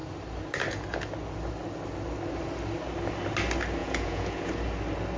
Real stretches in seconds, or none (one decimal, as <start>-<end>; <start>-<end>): 0.0-3.8; 4.5-5.2